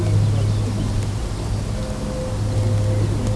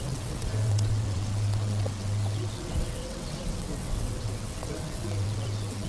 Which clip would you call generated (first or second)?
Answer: second